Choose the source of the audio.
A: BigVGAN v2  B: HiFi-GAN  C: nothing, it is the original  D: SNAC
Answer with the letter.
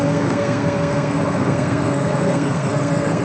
D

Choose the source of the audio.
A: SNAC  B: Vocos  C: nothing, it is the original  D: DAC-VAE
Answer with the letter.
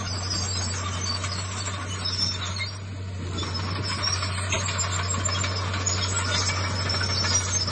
C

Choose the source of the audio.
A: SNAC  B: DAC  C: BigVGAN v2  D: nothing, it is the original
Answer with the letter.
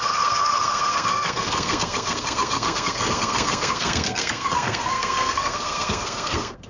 A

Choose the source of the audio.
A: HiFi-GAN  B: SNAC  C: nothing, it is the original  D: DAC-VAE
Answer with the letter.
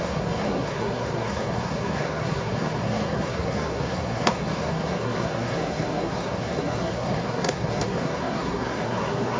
B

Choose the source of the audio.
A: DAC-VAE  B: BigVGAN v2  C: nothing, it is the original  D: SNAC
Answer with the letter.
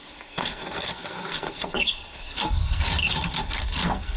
D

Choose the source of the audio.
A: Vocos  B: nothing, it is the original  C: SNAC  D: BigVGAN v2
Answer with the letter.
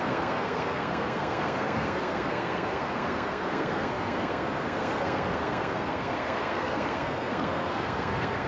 C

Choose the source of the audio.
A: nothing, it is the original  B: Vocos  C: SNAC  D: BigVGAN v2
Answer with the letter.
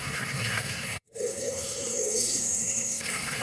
C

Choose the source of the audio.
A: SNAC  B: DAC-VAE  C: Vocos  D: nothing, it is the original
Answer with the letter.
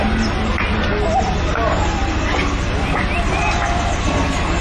D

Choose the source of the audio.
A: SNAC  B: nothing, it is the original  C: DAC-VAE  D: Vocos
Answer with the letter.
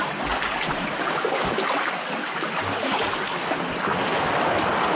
B